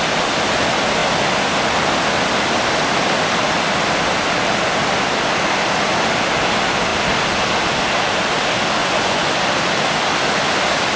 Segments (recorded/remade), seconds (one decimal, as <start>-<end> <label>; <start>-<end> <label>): 0.0-8.8 recorded; 8.8-9.3 remade; 9.3-11.0 recorded

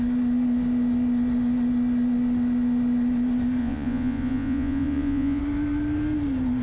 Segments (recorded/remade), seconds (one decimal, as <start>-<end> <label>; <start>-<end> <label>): 0.0-3.6 recorded; 3.6-5.4 remade; 5.4-6.6 recorded

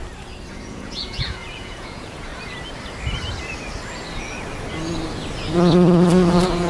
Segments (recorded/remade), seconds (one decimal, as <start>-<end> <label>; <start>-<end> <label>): 0.0-0.5 recorded; 0.5-2.3 remade; 2.3-6.3 recorded; 6.3-6.7 remade

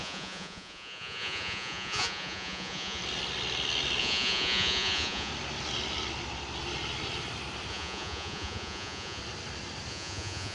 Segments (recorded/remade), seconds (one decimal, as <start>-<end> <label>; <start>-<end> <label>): 0.0-3.0 remade; 3.0-4.0 recorded; 4.0-5.3 remade; 5.3-7.7 recorded; 7.7-9.2 remade; 9.2-9.9 recorded; 9.9-10.5 remade

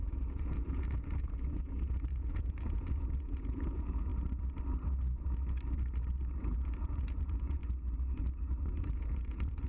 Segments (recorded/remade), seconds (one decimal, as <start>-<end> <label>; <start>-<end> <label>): 0.0-4.1 remade; 4.1-6.4 recorded; 6.4-7.6 remade; 7.6-8.8 recorded; 8.8-9.7 remade

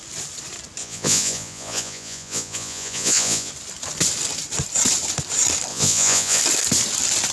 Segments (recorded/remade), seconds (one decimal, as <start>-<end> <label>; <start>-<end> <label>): 0.0-0.8 recorded; 0.8-3.5 remade; 3.5-5.7 recorded; 5.7-6.4 remade; 6.4-7.3 recorded

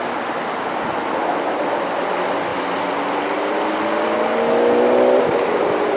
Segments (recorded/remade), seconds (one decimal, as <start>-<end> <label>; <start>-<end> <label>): 0.0-6.0 recorded